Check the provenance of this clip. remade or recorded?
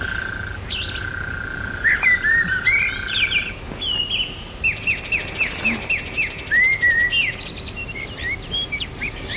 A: recorded